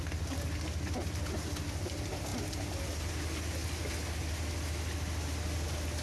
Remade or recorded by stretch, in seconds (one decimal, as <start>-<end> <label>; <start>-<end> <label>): 0.0-6.0 recorded